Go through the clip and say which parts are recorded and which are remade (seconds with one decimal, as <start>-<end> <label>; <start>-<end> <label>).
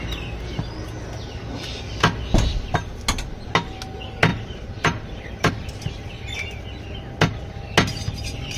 0.0-4.3 recorded; 4.3-5.5 remade; 5.5-8.6 recorded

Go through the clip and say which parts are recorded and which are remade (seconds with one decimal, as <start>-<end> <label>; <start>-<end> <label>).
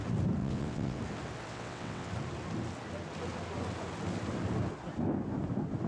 0.0-0.4 recorded; 0.4-1.0 remade; 1.0-1.5 recorded; 1.5-2.1 remade; 2.1-5.9 recorded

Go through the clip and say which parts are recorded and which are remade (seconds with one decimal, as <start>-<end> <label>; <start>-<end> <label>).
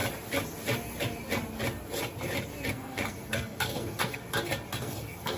0.0-2.7 recorded; 2.7-4.2 remade; 4.2-4.8 recorded; 4.8-5.4 remade